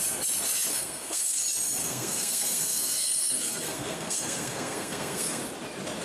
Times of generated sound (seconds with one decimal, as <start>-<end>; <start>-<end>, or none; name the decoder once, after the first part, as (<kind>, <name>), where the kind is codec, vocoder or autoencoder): 0.7-1.4 (codec, SNAC); 1.8-5.4